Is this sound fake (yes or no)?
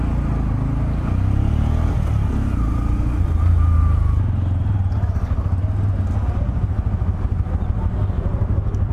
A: no